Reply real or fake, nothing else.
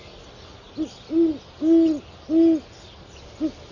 real